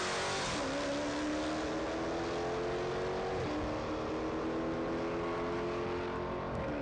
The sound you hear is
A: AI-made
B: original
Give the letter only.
B